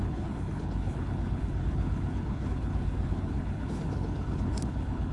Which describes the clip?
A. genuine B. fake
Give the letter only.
B